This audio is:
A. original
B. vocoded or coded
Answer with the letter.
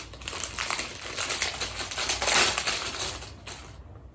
A